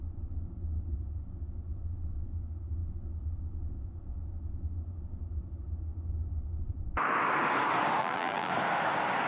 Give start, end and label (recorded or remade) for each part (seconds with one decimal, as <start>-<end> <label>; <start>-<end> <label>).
0.0-8.0 recorded; 8.0-8.5 remade; 8.5-9.3 recorded